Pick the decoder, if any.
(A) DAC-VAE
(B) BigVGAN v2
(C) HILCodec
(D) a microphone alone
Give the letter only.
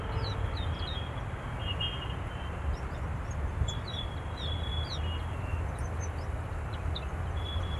D